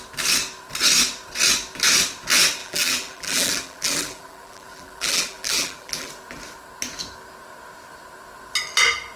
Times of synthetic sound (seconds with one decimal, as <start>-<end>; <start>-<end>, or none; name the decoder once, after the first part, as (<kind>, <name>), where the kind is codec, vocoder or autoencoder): 2.6-6.1 (vocoder, BigVGAN v2)